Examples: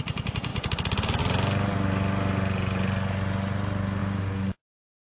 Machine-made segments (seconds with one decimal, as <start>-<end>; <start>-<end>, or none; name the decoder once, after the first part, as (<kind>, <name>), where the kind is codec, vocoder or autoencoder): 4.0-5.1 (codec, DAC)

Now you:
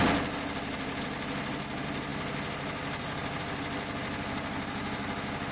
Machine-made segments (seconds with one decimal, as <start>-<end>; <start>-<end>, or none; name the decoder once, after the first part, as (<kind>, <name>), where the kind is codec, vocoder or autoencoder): none

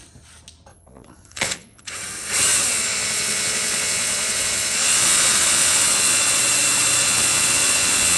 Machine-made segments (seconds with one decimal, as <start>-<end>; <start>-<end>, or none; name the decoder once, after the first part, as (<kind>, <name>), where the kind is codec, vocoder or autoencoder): 0.7-2.0 (vocoder, Vocos); 2.5-6.4; 7.0-8.2

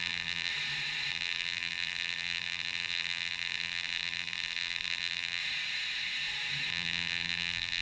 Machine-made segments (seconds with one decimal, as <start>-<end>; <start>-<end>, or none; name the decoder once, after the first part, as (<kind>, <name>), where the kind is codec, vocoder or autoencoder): 0.0-0.5 (vocoder, BigVGAN v2); 1.1-5.4; 6.7-7.8